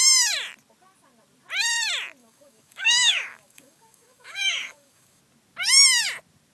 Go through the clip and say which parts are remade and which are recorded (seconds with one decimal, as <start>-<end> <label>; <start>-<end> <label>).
0.0-2.2 recorded; 2.2-5.2 remade; 5.2-6.5 recorded